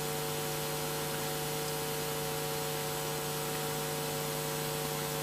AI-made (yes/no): no